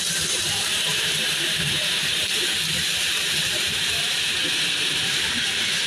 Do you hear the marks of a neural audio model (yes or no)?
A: yes